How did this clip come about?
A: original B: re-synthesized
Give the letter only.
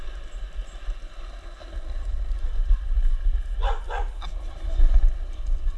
A